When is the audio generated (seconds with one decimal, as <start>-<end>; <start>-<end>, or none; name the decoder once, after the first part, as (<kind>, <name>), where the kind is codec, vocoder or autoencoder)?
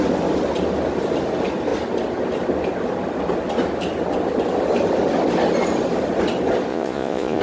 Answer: 6.7-7.4 (vocoder, Vocos)